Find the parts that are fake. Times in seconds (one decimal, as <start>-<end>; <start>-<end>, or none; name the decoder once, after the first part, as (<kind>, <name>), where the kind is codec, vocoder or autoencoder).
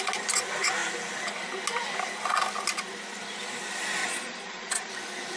4.0-4.9 (vocoder, Vocos)